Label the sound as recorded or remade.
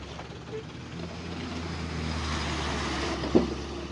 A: recorded